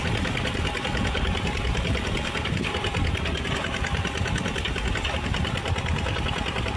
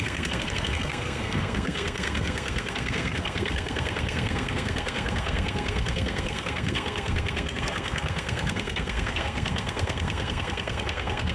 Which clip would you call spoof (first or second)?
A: second